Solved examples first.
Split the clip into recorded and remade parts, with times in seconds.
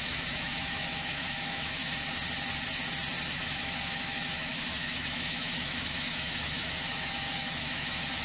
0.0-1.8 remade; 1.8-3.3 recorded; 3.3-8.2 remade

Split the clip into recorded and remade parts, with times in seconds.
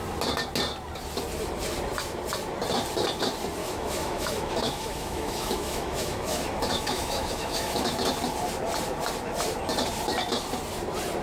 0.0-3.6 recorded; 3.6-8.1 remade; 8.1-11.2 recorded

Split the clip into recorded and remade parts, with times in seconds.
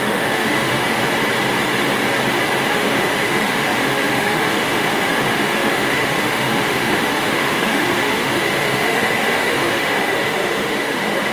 0.0-1.0 remade; 1.0-2.7 recorded; 2.7-11.3 remade